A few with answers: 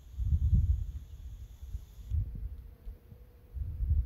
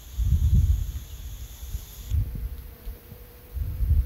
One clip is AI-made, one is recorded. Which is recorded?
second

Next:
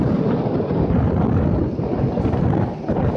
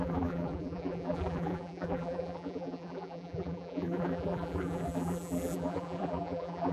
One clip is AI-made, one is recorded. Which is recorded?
first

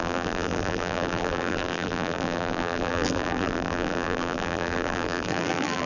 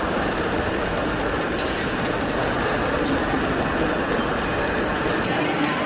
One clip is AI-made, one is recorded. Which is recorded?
second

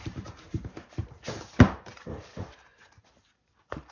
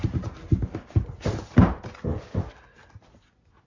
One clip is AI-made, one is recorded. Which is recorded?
second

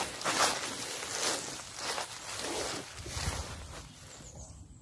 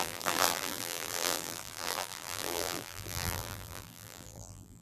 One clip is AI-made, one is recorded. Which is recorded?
first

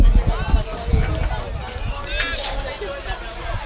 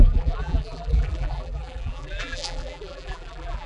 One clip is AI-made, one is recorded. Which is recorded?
first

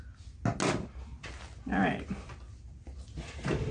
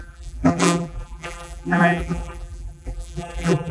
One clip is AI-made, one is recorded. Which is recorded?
first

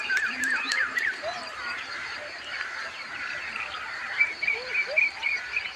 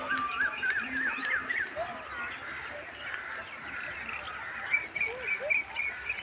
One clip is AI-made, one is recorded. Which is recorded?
second